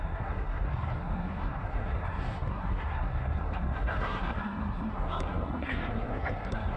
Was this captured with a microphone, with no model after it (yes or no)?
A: no